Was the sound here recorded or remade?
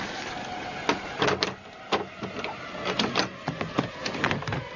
recorded